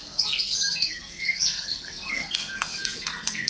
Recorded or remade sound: remade